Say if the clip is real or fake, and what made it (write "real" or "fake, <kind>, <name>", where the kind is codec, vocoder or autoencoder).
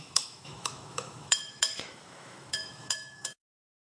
fake, autoencoder, DAC-VAE